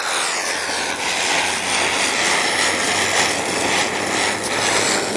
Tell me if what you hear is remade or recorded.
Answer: recorded